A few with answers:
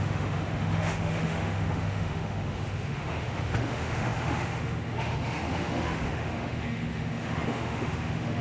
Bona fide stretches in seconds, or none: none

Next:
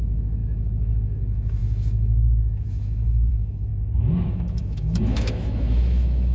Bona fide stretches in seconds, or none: 3.7-4.3

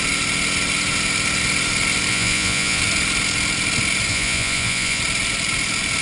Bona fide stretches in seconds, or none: 0.0-2.1; 2.8-4.1; 5.0-6.0

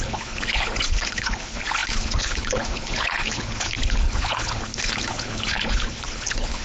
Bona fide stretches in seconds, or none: none

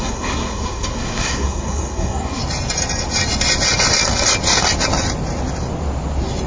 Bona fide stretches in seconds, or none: 2.4-6.5